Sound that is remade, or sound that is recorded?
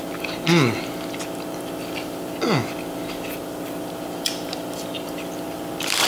recorded